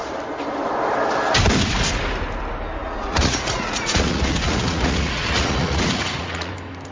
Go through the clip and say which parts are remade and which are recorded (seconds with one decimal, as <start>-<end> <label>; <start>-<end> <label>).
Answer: 0.0-2.8 recorded; 2.8-6.5 remade; 6.5-6.9 recorded